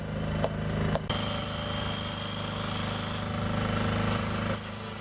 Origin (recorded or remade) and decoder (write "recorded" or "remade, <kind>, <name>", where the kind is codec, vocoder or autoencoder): recorded